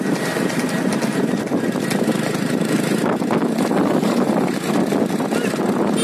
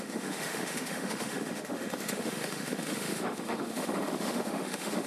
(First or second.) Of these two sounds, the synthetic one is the second